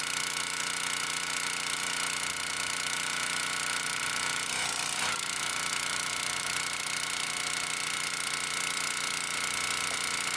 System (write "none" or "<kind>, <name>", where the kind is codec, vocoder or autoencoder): none